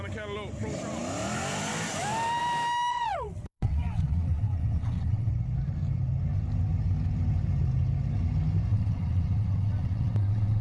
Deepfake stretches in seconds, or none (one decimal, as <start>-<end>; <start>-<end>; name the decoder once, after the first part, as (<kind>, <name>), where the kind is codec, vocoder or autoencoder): 2.9-5.3 (vocoder, WaveNeXt); 8.7-10.6